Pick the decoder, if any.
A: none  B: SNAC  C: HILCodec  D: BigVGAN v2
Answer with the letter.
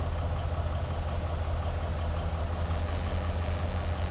A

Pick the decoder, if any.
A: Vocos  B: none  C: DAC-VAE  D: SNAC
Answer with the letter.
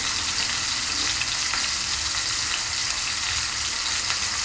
B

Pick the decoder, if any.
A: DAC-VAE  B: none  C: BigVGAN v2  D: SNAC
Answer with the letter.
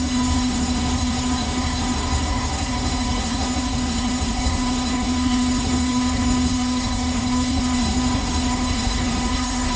D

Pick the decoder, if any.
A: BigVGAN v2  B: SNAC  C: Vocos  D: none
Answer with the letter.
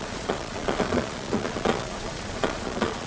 C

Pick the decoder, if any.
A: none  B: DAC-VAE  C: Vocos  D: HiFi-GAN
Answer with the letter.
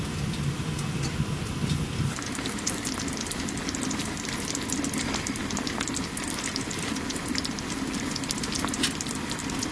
A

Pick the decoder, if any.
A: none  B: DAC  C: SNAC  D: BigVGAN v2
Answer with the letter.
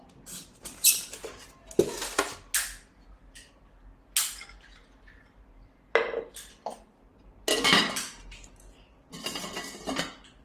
A